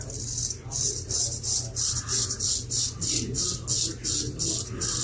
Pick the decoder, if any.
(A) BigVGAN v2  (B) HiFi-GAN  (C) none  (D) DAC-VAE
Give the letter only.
C